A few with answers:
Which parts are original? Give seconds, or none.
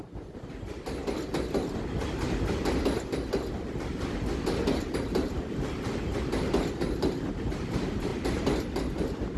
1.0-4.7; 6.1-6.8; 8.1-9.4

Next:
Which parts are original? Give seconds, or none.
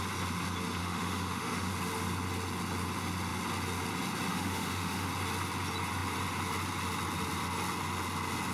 0.0-0.8; 1.7-4.3; 5.1-8.5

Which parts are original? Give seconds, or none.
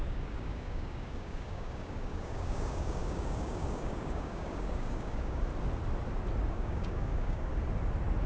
5.5-6.5; 7.5-8.3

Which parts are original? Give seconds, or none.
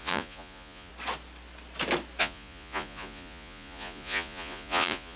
0.9-2.2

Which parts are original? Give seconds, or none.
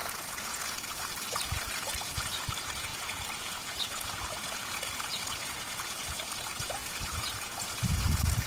none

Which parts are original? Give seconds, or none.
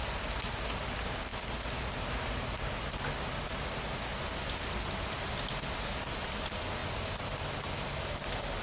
0.0-8.6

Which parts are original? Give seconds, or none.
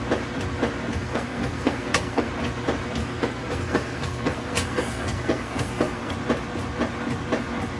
0.0-0.9; 2.3-3.0; 6.1-7.8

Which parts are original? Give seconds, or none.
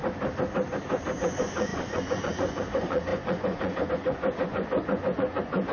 0.0-1.2